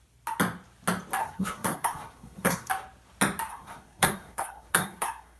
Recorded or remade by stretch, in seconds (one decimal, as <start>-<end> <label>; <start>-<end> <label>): 0.0-1.2 recorded; 1.2-2.7 remade; 2.7-3.5 recorded; 3.5-5.4 remade